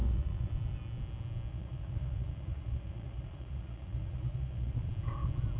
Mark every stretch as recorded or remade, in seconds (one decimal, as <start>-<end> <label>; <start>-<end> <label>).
0.0-0.5 remade; 0.5-1.5 recorded; 1.5-4.9 remade; 4.9-5.6 recorded